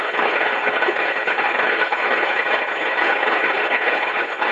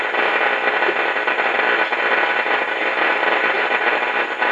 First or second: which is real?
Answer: second